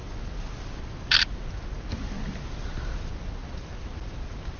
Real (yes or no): yes